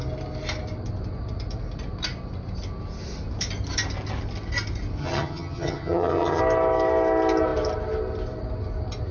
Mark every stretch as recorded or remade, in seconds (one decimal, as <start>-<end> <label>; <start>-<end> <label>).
0.0-5.0 recorded; 5.0-6.4 remade; 6.4-9.1 recorded